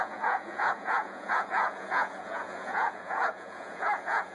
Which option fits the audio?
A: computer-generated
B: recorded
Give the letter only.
A